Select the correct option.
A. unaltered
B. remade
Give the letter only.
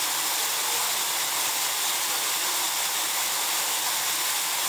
A